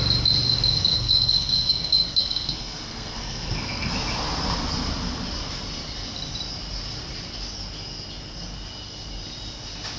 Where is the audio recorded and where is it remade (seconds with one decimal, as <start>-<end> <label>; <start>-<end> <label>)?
0.0-0.9 recorded; 0.9-3.9 remade; 3.9-10.0 recorded

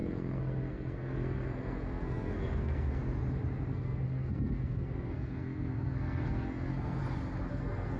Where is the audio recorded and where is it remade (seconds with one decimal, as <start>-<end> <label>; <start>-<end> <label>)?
0.0-3.0 remade; 3.0-3.7 recorded; 3.7-7.0 remade; 7.0-7.5 recorded; 7.5-8.0 remade